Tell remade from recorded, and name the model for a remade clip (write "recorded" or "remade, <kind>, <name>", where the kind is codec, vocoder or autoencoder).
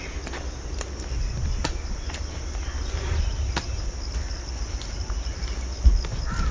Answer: recorded